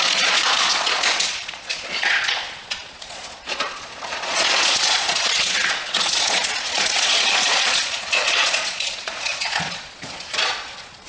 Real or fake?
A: fake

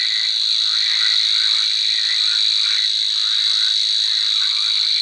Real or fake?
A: real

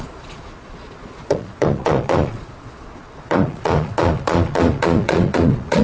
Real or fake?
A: fake